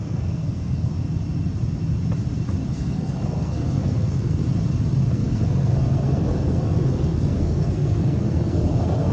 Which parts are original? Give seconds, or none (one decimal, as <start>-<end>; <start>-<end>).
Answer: 0.9-2.7; 4.4-5.1